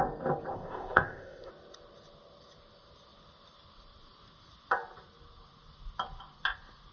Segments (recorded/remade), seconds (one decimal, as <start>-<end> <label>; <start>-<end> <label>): 0.0-0.5 recorded; 0.5-1.5 remade; 1.5-6.9 recorded